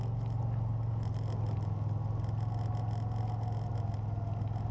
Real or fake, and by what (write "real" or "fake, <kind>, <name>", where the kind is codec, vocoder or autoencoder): real